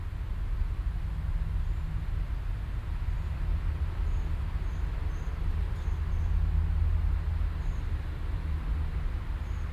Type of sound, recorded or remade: recorded